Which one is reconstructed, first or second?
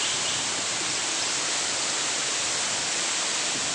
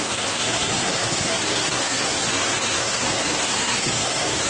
second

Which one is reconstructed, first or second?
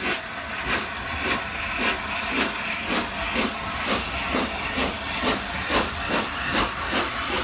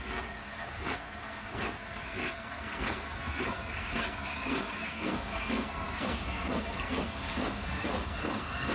second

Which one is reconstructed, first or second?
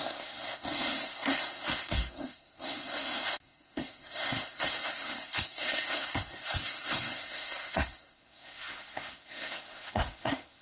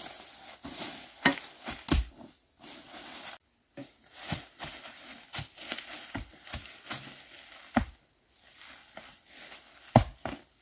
first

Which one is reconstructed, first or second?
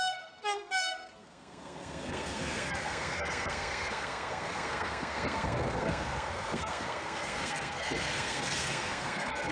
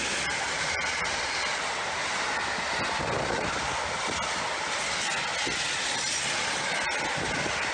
first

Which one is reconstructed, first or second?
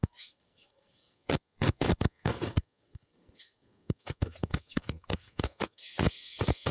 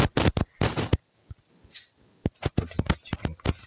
first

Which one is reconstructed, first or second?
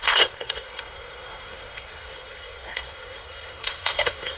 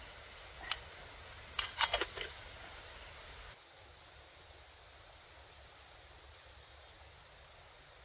first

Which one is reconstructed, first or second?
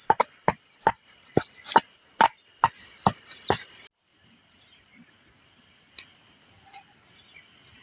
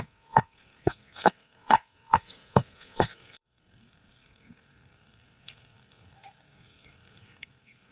second